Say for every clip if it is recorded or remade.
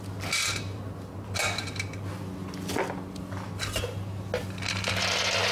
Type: recorded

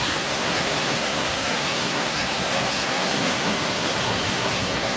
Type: remade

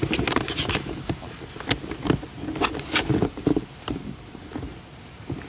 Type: recorded